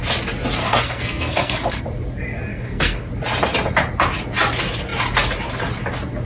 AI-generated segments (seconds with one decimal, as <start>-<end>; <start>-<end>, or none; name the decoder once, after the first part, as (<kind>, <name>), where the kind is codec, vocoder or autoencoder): 0.6-1.8 (codec, SNAC); 2.5-3.1